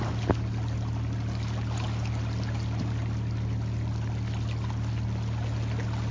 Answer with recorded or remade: recorded